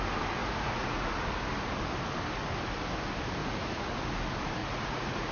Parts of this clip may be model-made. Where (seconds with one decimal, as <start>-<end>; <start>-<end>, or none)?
0.4-1.1; 3.4-3.9; 4.6-5.3